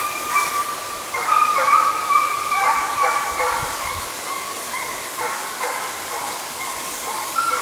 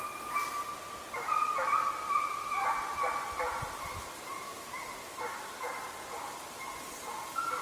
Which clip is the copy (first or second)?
first